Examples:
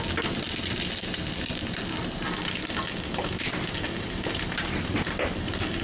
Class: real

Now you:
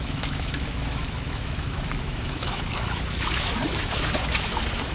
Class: fake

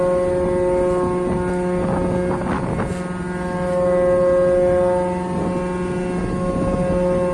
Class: real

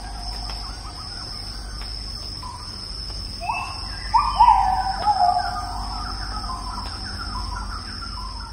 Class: real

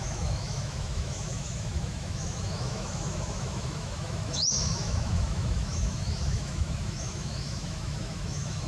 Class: fake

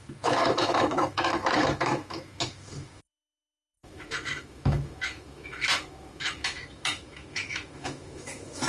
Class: fake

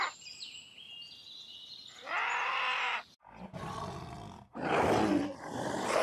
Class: real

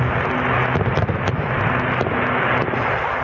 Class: real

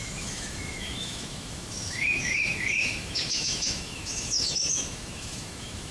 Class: fake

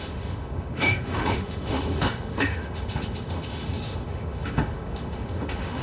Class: fake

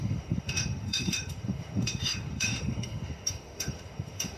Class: fake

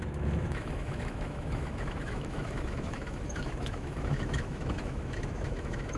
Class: fake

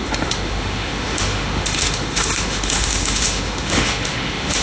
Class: fake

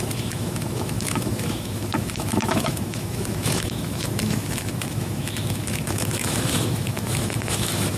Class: fake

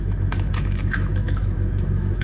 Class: fake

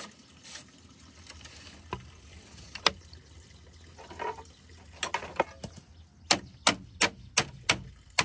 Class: real